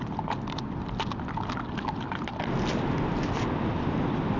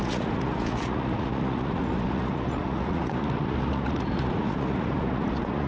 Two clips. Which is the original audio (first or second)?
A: first